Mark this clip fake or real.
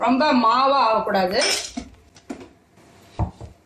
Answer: real